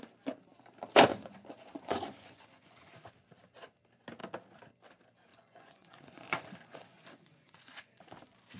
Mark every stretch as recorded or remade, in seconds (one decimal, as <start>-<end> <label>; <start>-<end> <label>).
0.0-1.1 recorded; 1.1-3.1 remade; 3.1-5.3 recorded; 5.3-8.0 remade; 8.0-8.6 recorded